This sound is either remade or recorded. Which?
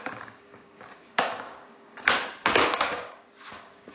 remade